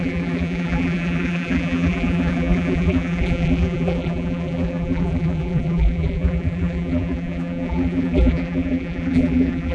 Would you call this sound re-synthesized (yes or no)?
yes